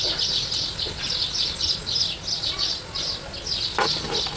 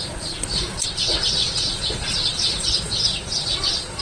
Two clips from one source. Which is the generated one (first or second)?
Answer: second